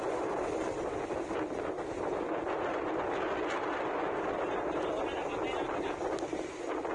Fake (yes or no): no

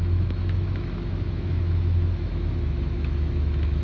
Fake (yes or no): yes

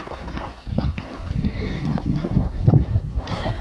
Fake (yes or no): yes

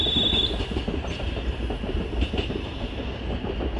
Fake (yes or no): no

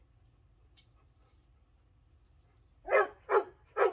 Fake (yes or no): no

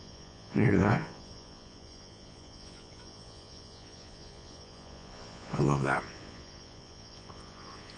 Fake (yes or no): yes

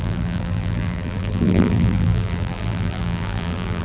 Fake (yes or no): yes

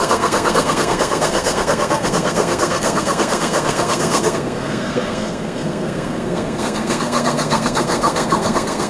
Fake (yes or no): yes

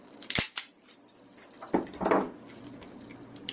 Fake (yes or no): no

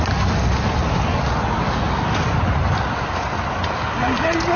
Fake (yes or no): no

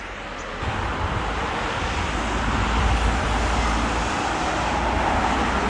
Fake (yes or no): no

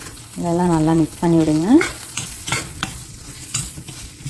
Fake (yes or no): yes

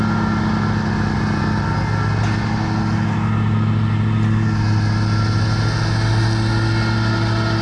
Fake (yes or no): no